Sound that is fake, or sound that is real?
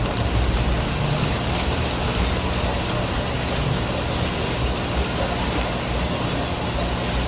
real